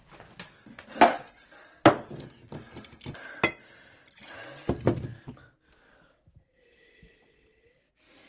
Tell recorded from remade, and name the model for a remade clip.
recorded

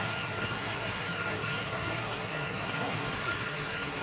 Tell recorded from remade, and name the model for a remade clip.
remade, codec, SNAC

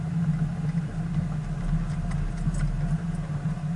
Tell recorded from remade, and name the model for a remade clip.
recorded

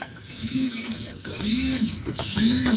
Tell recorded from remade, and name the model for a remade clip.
remade, codec, SNAC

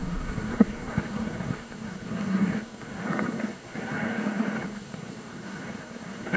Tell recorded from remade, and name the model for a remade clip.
remade, codec, SNAC